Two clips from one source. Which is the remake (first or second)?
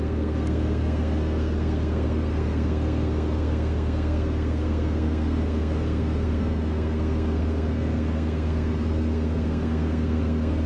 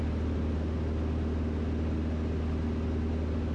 first